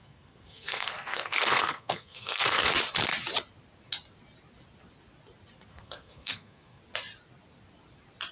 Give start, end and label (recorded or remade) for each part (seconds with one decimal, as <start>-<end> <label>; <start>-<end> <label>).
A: 0.0-2.7 remade; 2.7-5.7 recorded; 5.7-6.8 remade; 6.8-8.3 recorded